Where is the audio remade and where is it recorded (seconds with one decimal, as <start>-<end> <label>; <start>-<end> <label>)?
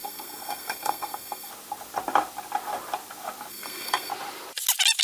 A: 0.0-1.5 remade; 1.5-3.5 recorded; 3.5-4.1 remade; 4.1-5.0 recorded